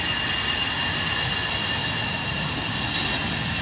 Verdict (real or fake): real